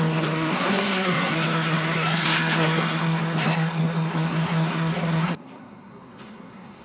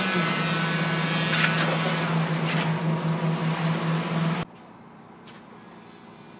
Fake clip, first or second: first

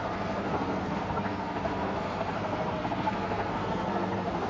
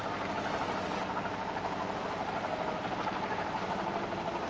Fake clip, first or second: first